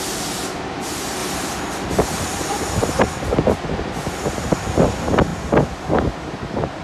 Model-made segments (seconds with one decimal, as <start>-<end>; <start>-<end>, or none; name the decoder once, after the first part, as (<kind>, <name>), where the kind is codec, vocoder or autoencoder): none